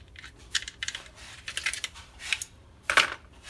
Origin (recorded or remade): remade